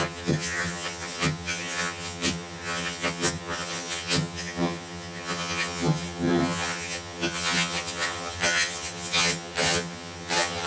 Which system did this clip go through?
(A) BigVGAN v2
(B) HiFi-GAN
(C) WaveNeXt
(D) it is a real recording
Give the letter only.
B